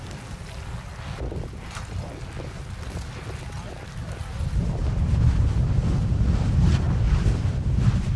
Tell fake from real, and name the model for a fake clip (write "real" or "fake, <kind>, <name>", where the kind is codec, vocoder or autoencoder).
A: real